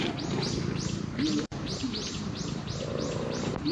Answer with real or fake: fake